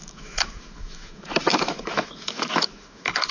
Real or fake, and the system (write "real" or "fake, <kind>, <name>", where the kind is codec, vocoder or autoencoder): fake, autoencoder, DAC-VAE